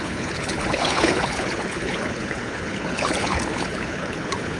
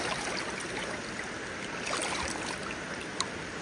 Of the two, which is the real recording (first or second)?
second